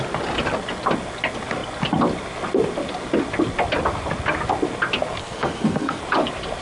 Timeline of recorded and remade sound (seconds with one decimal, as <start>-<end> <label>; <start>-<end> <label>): 0.0-5.2 recorded; 5.2-6.0 remade; 6.0-6.6 recorded